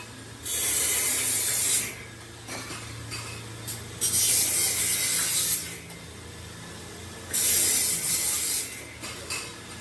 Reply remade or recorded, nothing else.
recorded